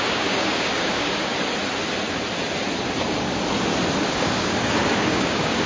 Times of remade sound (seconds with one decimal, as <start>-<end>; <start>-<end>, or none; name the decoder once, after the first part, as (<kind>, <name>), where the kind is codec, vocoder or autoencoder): 0.0-1.3 (codec, DAC); 4.1-5.7